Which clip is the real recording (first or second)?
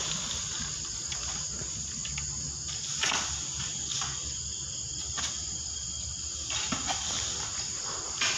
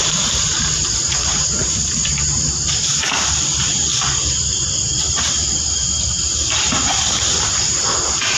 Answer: first